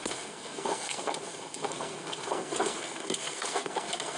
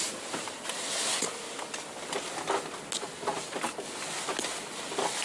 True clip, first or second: second